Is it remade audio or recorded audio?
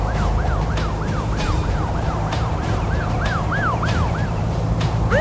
remade